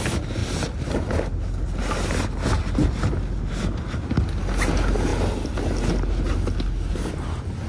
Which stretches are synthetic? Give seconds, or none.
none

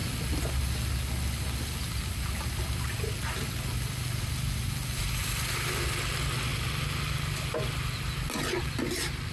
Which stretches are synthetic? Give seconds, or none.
none

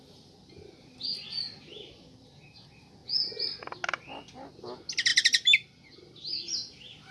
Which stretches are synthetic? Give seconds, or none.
none

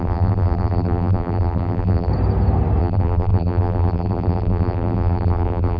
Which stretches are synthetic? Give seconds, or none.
0.0-2.1 (vocoder, BigVGAN v2); 2.8-5.8

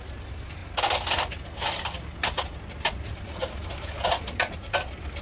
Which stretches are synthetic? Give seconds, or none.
none

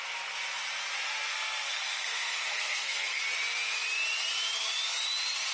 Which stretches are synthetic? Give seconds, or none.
1.3-3.2 (codec, SNAC)

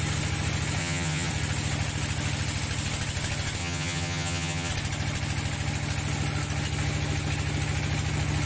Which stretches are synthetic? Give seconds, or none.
0.8-1.3 (vocoder, HiFi-GAN); 3.6-4.7

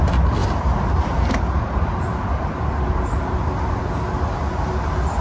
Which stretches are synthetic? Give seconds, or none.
0.4-3.5 (vocoder, BigVGAN v2)